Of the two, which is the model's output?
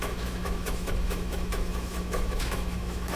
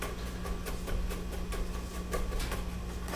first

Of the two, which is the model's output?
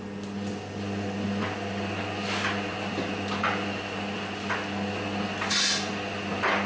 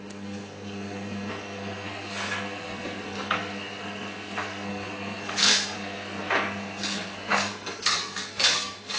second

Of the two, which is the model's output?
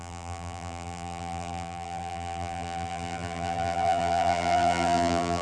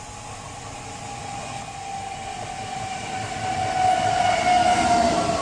first